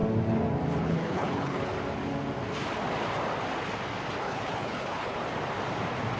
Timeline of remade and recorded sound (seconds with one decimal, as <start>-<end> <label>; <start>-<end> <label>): 0.0-0.8 recorded; 0.8-1.7 remade; 1.7-4.2 recorded; 4.2-5.2 remade; 5.2-6.2 recorded